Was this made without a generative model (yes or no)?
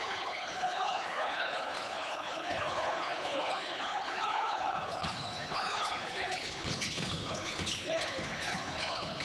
no